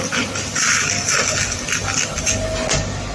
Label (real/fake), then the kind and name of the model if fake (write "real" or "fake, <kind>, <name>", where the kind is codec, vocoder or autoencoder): real